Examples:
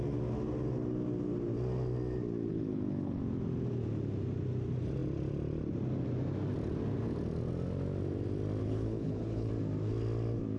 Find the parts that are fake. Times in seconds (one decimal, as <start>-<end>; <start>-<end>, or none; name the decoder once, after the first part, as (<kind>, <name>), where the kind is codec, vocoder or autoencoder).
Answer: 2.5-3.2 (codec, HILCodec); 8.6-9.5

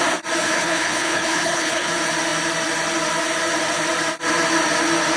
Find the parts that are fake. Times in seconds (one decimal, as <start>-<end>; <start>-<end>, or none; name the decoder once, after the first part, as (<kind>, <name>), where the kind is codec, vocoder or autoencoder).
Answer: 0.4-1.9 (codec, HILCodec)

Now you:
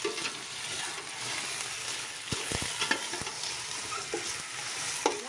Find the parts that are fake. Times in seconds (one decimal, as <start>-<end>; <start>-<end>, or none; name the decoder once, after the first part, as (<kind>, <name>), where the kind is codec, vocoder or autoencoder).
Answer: 1.8-2.6 (codec, HILCodec)

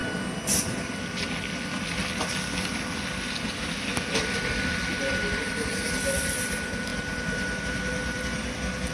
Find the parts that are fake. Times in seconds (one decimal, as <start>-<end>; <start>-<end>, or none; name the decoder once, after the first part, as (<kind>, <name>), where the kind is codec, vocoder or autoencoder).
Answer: none

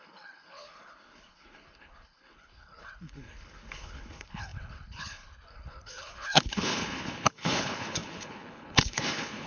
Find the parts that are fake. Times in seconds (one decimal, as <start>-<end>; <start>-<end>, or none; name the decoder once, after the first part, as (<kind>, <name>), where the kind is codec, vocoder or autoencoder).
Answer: 0.0-9.5 (codec, HILCodec)

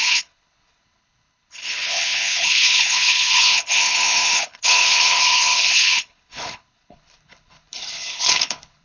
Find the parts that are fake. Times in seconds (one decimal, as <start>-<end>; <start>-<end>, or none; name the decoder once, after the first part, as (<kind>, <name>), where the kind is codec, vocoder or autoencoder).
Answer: 0.0-8.8 (codec, HILCodec)

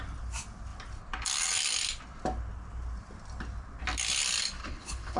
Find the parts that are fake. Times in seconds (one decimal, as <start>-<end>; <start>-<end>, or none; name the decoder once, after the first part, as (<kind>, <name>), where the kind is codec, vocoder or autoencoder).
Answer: 4.6-5.2 (codec, HILCodec)

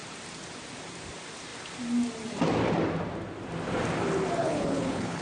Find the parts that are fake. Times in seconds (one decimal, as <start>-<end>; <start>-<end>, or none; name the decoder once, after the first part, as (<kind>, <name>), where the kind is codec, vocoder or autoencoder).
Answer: 4.4-5.2 (codec, HILCodec)